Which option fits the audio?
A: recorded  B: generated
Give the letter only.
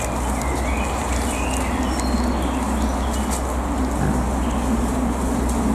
A